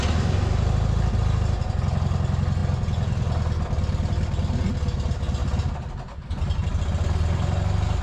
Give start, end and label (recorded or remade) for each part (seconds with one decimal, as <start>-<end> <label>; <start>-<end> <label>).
0.0-8.0 recorded